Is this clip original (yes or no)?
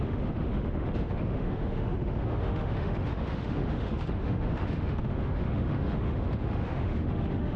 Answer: no